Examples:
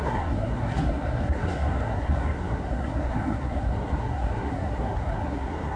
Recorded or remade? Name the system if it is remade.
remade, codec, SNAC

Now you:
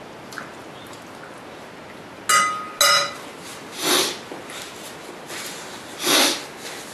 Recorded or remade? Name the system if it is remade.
recorded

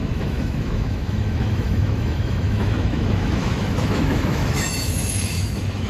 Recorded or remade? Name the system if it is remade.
remade, autoencoder, DAC-VAE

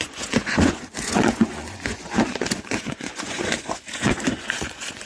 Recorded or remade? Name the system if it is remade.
remade, vocoder, Vocos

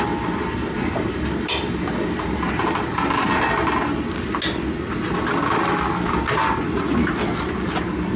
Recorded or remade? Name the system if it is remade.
recorded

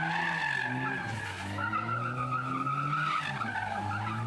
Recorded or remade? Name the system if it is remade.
recorded